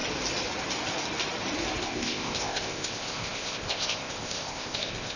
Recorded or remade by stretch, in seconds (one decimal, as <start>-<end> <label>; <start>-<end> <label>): 0.0-1.8 recorded; 1.8-5.2 remade